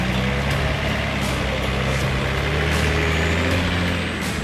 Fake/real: real